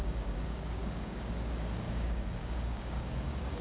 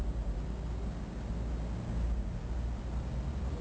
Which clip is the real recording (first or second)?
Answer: second